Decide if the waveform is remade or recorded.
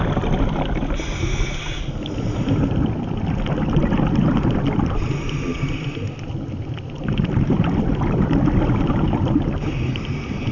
recorded